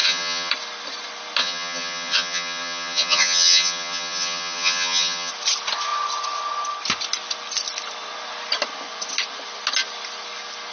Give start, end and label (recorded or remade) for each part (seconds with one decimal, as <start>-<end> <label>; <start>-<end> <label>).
0.0-0.5 remade; 0.5-1.4 recorded; 1.4-5.3 remade; 5.3-10.7 recorded